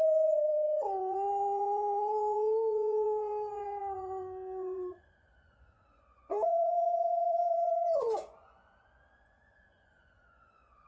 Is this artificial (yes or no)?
yes